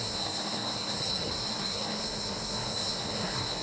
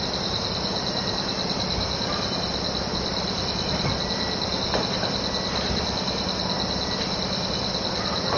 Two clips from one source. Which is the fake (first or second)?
first